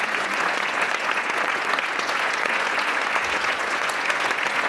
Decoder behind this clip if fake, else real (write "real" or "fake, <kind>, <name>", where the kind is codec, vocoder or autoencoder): fake, vocoder, Vocos